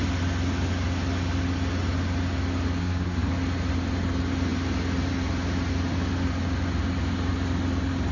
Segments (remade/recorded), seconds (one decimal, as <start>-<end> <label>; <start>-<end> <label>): 0.0-2.8 recorded; 2.8-3.3 remade; 3.3-8.1 recorded